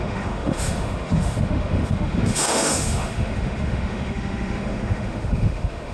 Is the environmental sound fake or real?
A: fake